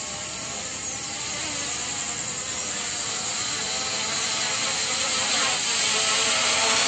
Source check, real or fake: real